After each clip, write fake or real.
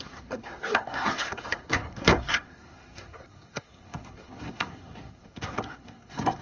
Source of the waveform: fake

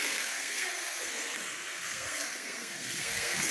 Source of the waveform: fake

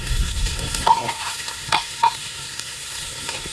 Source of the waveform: fake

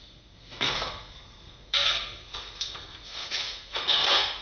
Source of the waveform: fake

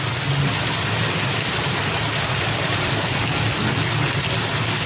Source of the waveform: real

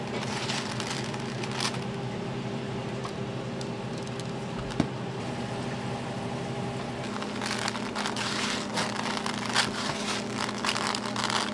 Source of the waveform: real